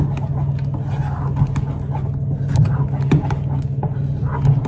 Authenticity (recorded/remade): recorded